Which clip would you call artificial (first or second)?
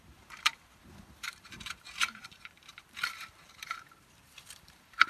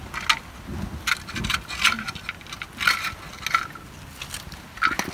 first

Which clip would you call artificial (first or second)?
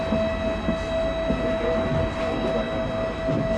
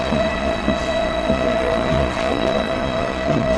second